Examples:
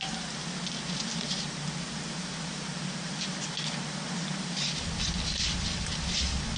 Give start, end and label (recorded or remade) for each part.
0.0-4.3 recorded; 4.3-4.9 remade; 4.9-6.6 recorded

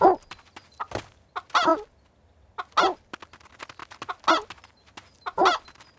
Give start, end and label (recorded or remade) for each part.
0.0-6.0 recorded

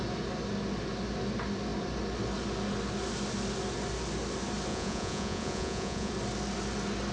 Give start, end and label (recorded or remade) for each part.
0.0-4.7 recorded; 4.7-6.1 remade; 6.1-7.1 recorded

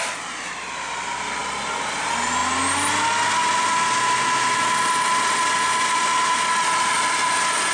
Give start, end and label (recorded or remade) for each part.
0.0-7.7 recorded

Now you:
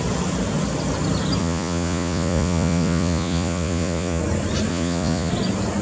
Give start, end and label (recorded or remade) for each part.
0.0-1.4 recorded; 1.4-4.2 remade; 4.2-4.7 recorded; 4.7-5.3 remade; 5.3-5.8 recorded